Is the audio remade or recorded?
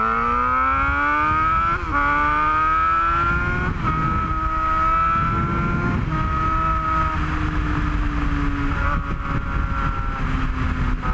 recorded